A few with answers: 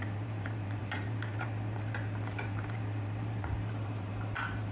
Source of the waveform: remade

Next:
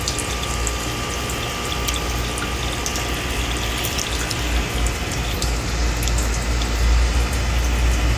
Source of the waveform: recorded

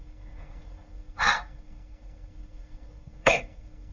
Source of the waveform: remade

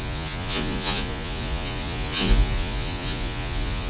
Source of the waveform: remade